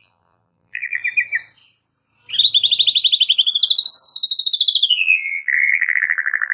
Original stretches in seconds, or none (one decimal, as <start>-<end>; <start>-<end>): 1.0-4.9